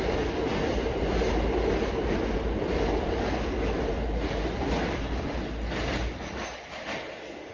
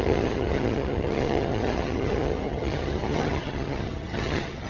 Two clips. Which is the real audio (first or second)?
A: first